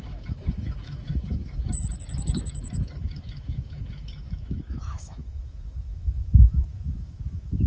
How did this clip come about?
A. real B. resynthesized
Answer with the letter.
B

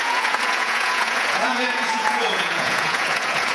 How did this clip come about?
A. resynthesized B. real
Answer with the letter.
A